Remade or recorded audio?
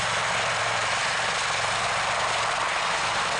recorded